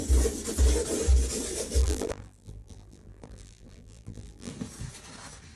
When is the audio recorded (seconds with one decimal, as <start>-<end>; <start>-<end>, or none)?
0.0-1.8; 4.5-5.6